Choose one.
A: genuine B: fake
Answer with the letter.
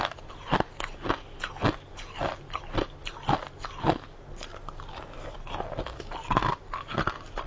A